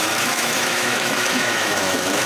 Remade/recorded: remade